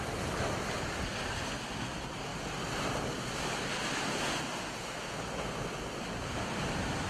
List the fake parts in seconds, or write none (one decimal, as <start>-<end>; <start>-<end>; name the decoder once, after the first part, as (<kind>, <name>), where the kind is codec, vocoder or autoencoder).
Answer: none